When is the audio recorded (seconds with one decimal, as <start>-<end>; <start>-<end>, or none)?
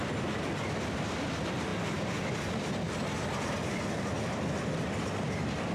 0.0-5.7